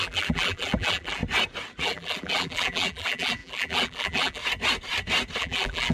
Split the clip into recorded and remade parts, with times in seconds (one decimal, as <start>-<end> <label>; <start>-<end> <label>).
0.0-1.2 remade; 1.2-1.8 recorded; 1.8-4.4 remade; 4.4-5.4 recorded; 5.4-5.9 remade